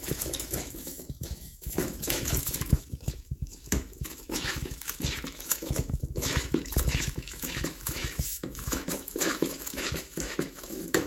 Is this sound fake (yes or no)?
yes